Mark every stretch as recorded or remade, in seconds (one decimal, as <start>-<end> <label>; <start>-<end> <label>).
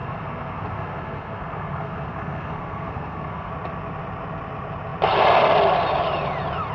0.0-3.5 remade; 3.5-6.7 recorded